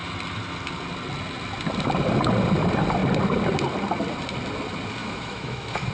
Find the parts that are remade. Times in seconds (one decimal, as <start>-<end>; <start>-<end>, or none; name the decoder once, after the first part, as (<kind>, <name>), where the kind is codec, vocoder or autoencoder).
5.0-5.9 (autoencoder, DAC-VAE)